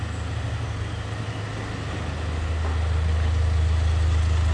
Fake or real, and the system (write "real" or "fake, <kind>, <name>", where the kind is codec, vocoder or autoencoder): real